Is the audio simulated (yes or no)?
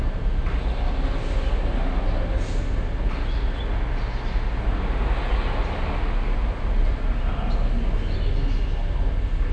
no